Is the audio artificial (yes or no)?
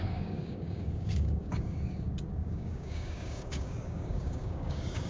yes